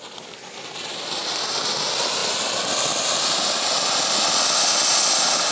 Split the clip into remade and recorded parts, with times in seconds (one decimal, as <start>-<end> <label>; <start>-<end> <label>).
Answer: 0.0-5.5 recorded